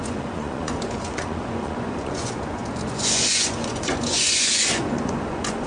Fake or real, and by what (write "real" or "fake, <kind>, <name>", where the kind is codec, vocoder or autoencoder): fake, vocoder, Vocos